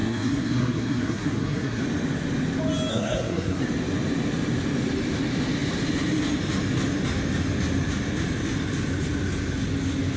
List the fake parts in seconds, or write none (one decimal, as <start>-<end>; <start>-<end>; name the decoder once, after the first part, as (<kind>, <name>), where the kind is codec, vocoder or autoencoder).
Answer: 0.0-1.8 (codec, SNAC); 2.9-3.7